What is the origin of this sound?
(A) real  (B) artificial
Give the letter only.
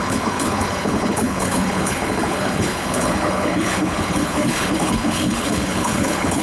B